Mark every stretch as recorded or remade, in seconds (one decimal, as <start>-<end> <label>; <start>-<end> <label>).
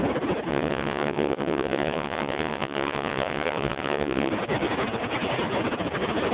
0.0-0.5 recorded; 0.5-4.3 remade; 4.3-6.3 recorded